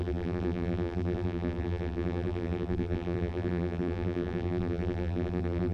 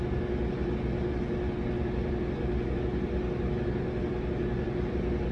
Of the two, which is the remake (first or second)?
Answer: first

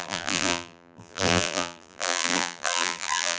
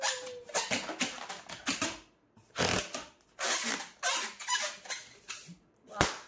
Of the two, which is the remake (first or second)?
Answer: first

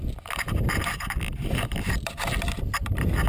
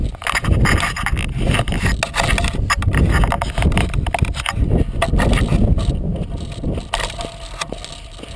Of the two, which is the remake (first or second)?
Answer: first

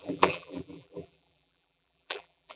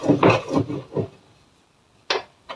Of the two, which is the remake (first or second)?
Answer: first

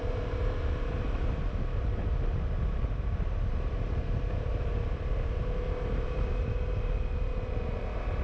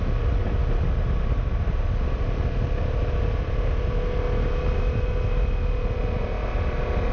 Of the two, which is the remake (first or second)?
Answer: first